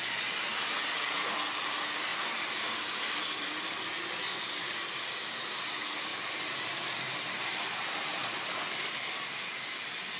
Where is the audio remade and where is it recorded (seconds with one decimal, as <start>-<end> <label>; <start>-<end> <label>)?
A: 0.0-0.5 recorded; 0.5-1.0 remade; 1.0-2.1 recorded; 2.1-3.6 remade; 3.6-6.1 recorded; 6.1-7.4 remade; 7.4-8.2 recorded; 8.2-9.0 remade; 9.0-10.2 recorded